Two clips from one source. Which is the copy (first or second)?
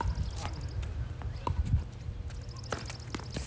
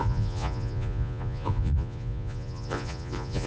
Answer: second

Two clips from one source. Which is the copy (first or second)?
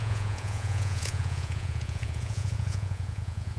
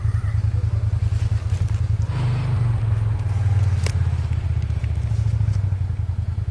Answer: first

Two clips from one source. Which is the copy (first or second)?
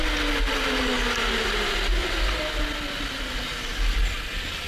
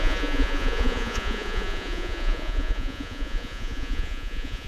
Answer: second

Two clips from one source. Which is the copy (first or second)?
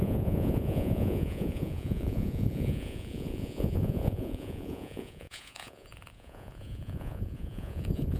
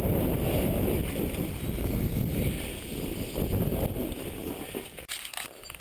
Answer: first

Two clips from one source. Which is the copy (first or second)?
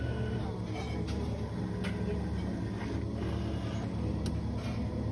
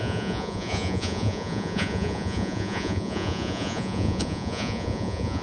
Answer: second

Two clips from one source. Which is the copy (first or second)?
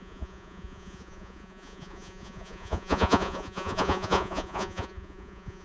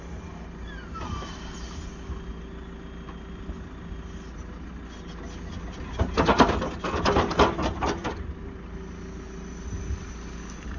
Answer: first